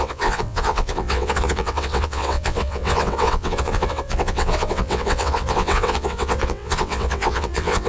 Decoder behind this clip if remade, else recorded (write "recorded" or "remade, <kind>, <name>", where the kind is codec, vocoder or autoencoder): remade, vocoder, WaveNeXt